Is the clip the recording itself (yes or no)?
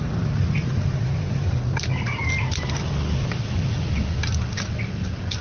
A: yes